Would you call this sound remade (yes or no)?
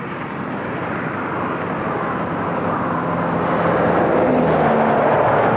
no